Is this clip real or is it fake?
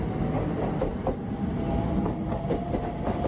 real